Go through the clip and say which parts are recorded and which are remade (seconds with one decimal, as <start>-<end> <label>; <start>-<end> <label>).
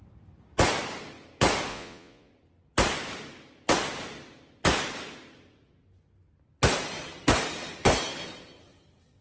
0.0-1.7 recorded; 1.7-2.3 remade; 2.3-9.2 recorded